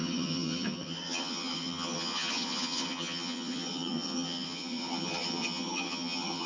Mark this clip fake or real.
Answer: fake